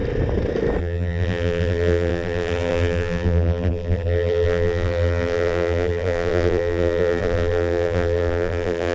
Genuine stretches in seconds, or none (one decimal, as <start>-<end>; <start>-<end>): 0.0-0.8